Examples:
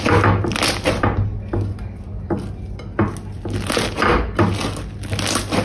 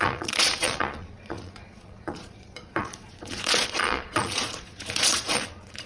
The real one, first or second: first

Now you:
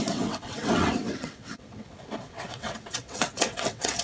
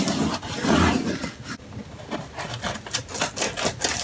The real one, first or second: second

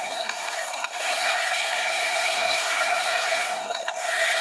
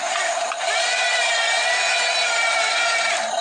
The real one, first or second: second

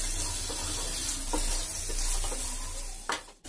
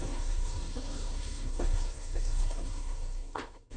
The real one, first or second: first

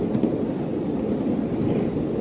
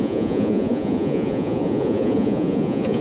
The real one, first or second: first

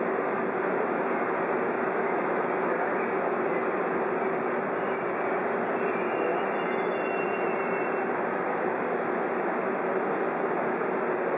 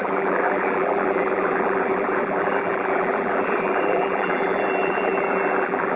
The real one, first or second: first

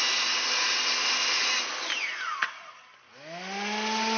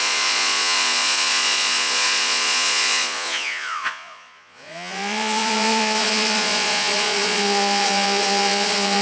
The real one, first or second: first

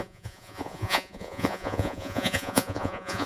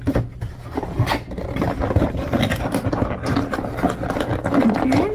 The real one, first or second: second